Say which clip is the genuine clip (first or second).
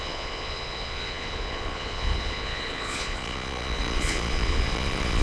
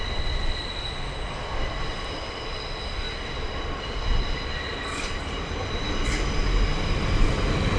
second